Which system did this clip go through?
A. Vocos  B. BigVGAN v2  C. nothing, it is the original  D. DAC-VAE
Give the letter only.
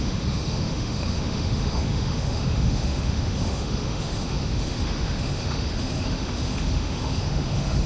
D